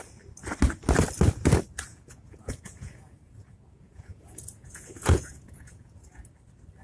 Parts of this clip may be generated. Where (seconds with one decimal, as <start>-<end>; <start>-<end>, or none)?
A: 1.9-6.0